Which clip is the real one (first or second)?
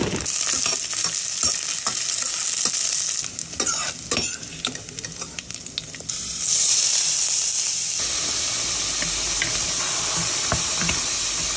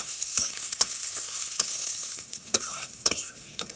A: first